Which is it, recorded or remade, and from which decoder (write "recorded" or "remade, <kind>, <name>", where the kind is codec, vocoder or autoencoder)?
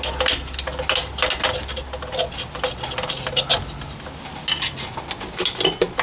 recorded